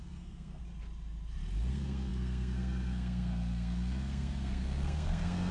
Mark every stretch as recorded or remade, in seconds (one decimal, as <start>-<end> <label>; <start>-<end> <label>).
0.0-0.6 remade; 0.6-1.7 recorded; 1.7-5.5 remade